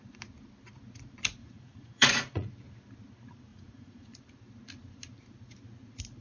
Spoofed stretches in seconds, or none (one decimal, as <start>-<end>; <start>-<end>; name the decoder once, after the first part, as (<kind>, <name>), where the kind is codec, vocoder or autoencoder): 1.4-2.5 (vocoder, Vocos); 3.5-4.2